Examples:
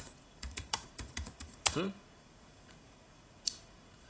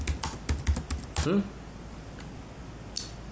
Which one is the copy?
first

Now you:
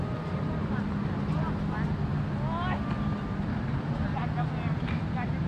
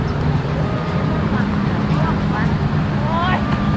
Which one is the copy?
second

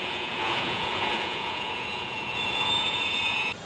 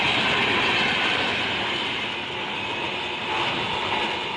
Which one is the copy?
first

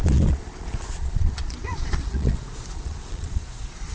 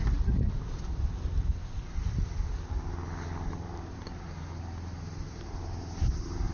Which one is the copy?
first